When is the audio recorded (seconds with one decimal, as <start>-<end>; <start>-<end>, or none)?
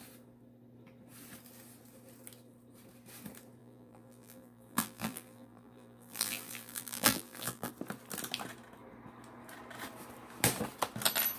0.0-3.6; 7.7-11.4